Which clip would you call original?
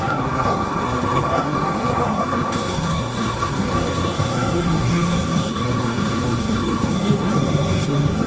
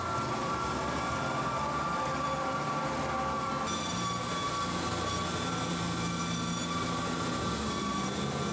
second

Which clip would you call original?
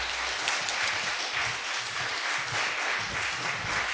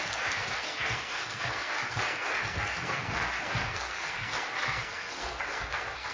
first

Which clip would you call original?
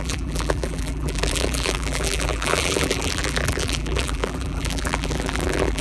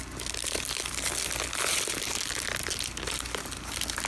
second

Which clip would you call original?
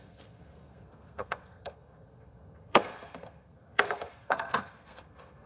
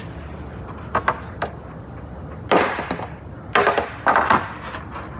second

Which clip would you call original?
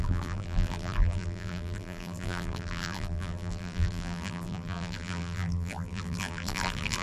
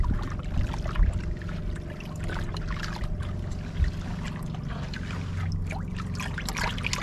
second